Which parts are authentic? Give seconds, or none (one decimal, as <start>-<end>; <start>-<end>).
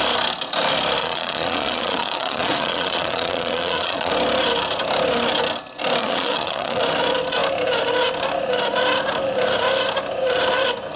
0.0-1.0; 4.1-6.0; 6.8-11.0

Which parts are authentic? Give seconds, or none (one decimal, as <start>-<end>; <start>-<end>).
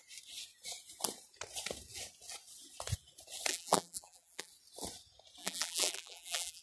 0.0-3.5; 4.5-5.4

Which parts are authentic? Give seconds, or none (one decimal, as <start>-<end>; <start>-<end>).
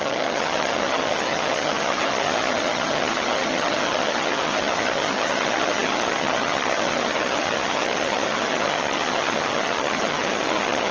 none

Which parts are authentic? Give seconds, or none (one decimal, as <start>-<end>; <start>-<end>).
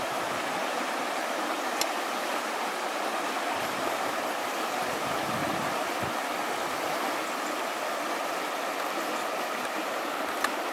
5.4-9.6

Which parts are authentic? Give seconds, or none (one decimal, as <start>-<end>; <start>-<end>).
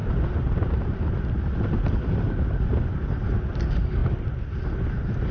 2.9-5.3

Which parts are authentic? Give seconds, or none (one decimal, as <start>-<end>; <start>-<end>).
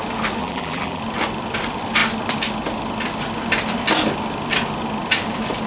0.0-0.4; 1.0-5.7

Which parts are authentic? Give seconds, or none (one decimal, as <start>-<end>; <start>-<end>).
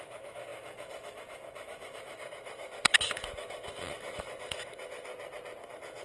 5.1-5.6